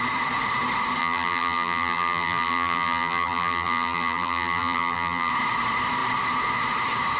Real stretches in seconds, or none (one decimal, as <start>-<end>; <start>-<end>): 0.0-1.0; 5.3-7.2